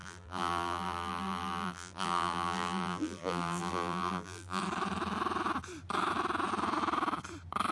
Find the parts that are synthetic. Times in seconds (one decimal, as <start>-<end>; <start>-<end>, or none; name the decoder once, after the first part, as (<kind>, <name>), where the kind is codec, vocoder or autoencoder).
0.0-4.6 (vocoder, BigVGAN v2)